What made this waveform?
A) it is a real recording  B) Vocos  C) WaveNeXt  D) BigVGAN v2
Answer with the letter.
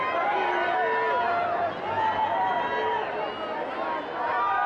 A